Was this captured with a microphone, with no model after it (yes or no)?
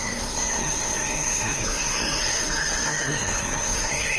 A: no